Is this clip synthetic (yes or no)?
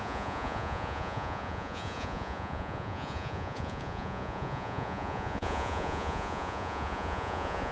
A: yes